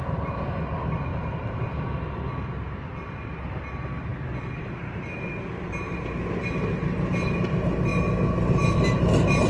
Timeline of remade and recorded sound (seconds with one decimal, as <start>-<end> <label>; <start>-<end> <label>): 0.0-1.1 recorded; 1.1-1.6 remade; 1.6-9.5 recorded